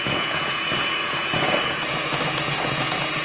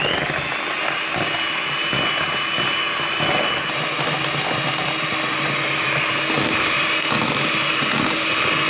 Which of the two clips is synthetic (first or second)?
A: first